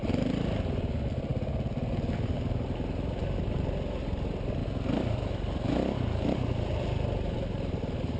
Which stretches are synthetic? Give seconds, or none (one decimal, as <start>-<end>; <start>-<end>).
none